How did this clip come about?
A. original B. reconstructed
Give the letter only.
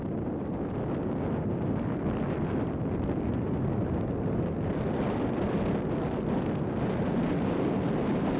A